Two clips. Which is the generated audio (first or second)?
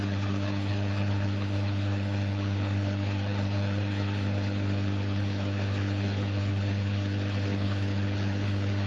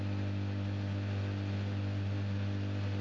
first